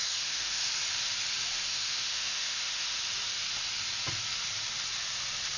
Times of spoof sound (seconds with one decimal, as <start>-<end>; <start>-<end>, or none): 0.0-0.7; 1.7-3.0